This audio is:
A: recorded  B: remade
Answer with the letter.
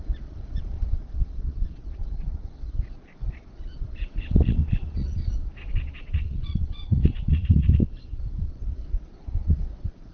B